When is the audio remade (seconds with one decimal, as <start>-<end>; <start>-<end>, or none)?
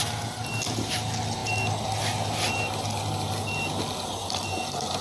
none